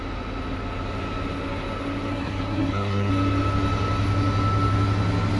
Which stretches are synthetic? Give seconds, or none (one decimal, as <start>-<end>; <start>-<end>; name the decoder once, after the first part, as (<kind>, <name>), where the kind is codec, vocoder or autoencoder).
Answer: 2.1-3.1 (codec, SNAC)